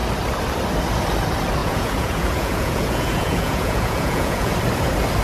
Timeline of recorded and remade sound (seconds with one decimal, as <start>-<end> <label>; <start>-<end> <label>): 0.0-1.6 recorded; 1.6-4.5 remade; 4.5-5.2 recorded